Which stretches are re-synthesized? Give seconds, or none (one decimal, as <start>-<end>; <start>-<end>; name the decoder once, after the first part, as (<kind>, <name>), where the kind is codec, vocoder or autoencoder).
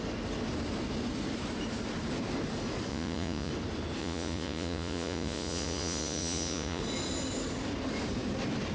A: 2.9-3.5 (vocoder, Vocos); 4.0-6.8